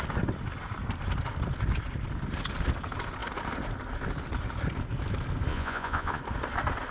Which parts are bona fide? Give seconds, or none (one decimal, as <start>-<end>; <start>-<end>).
0.0-5.5; 6.2-6.9